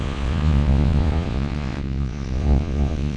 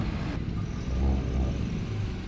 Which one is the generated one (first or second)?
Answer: first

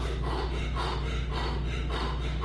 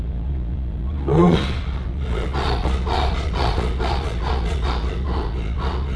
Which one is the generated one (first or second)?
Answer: second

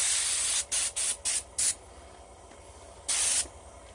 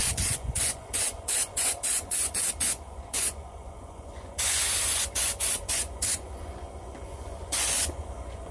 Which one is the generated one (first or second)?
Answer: second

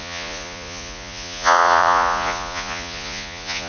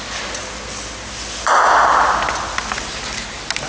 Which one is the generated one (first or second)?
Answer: first